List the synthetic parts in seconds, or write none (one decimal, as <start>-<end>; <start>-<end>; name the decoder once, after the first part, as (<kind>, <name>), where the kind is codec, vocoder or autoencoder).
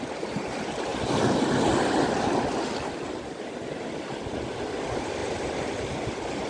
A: none